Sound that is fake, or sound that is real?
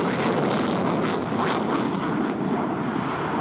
real